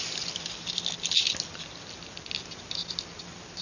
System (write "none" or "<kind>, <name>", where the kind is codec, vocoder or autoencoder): none